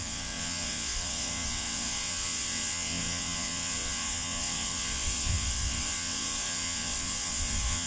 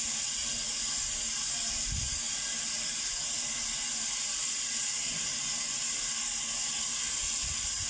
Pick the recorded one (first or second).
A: second